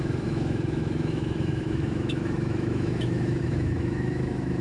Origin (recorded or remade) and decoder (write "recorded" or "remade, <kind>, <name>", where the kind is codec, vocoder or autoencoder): remade, autoencoder, DAC-VAE